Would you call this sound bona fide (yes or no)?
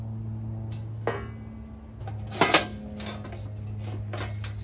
yes